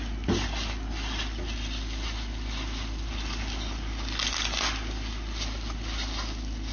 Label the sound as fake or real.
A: real